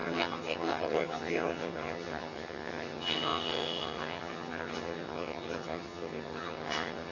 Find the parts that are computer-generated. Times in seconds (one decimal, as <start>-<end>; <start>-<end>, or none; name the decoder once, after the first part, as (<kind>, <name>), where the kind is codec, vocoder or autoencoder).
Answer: 0.0-7.1 (vocoder, HiFi-GAN)